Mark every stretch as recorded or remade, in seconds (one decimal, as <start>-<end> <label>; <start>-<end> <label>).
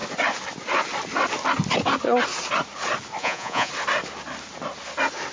0.0-3.2 recorded; 3.2-3.7 remade; 3.7-5.3 recorded